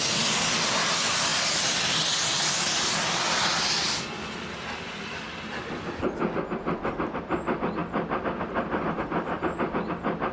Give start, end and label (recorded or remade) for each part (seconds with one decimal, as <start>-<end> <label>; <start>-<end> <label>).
0.0-10.3 recorded